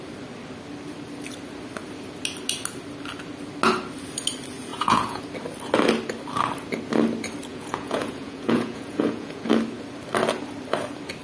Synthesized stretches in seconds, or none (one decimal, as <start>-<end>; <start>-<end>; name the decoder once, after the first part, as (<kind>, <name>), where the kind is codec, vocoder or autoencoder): 4.7-5.2 (vocoder, Vocos); 7.5-9.5

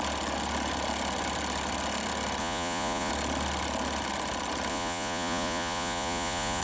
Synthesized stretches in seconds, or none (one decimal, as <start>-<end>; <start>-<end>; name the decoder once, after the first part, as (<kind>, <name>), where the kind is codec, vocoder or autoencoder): 2.4-3.1 (vocoder, Vocos); 4.7-6.6

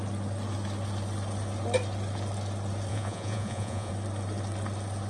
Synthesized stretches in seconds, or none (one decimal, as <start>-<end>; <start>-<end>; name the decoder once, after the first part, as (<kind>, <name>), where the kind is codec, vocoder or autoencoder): 2.9-3.9 (vocoder, Vocos)